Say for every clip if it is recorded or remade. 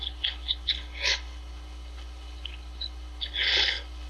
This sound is remade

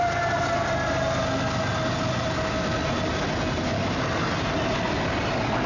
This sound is recorded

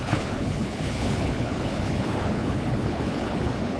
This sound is remade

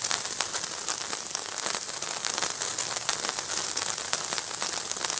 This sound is recorded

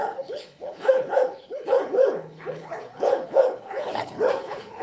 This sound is remade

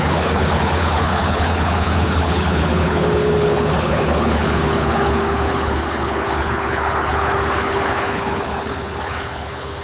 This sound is remade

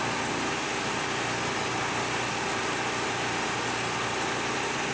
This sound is recorded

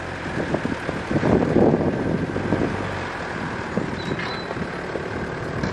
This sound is recorded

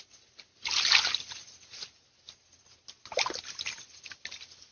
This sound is recorded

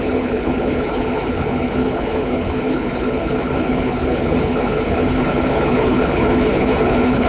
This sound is remade